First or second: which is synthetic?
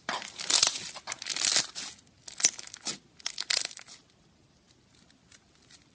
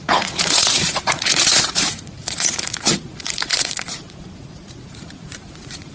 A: second